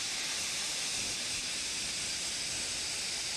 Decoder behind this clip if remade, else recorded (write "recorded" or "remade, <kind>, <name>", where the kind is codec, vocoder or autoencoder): recorded